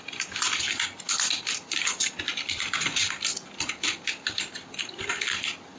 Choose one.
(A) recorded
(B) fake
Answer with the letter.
A